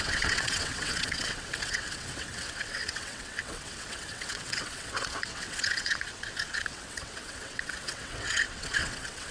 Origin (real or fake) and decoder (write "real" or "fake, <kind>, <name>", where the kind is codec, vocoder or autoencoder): fake, vocoder, WaveNeXt